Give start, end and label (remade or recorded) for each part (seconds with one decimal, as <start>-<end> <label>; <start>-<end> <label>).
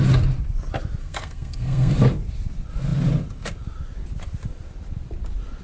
0.0-1.0 recorded; 1.0-1.9 remade; 1.9-5.6 recorded